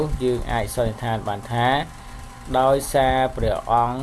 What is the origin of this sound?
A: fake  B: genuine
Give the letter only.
B